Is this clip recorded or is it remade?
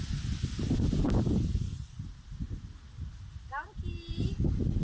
recorded